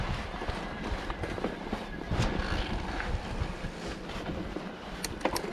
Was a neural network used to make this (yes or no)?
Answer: no